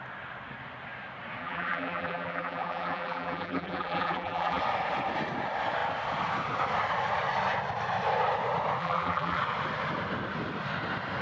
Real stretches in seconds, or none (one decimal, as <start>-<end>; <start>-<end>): 0.0-1.4; 4.6-8.8; 9.4-11.2